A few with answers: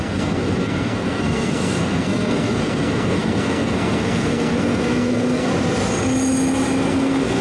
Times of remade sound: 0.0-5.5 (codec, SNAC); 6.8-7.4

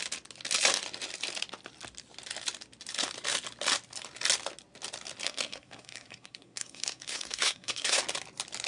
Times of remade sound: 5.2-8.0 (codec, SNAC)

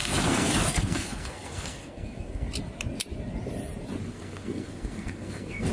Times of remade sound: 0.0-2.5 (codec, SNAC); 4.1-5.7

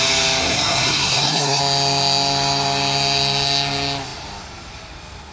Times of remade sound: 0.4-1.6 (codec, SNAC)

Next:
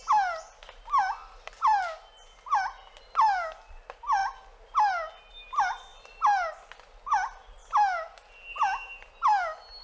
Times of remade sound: none